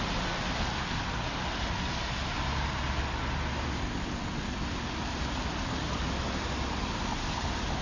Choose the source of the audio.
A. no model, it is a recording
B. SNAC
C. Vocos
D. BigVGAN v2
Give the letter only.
A